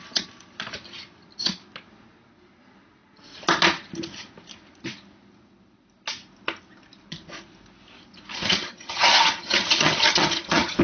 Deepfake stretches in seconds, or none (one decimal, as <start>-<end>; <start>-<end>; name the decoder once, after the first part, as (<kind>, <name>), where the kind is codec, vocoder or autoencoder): 8.3-10.8 (vocoder, HiFi-GAN)